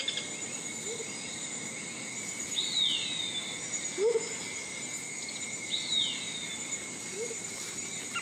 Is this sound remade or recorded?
recorded